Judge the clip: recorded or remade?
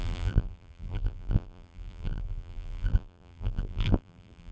remade